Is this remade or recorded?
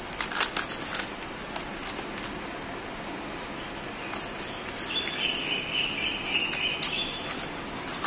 recorded